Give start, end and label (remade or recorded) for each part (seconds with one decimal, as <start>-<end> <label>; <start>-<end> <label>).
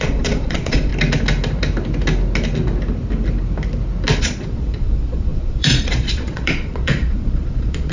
0.0-0.9 remade; 0.9-4.2 recorded; 4.2-7.9 remade